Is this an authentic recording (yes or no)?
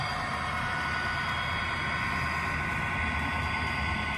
yes